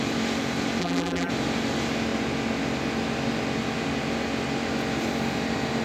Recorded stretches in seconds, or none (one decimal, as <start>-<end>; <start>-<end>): 0.0-0.8; 1.3-5.8

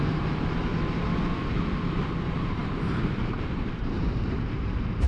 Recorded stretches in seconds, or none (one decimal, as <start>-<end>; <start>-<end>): 0.7-2.2

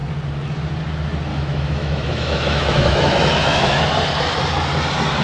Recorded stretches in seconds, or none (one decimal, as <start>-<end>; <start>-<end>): 0.0-1.3; 3.8-5.2

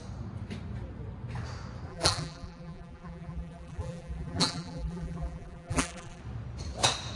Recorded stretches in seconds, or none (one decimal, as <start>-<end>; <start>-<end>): 0.0-1.9; 6.2-7.2

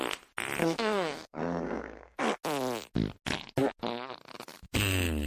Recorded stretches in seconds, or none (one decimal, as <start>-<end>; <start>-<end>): 0.0-0.6; 2.2-5.3